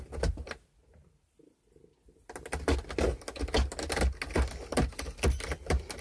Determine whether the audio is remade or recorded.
recorded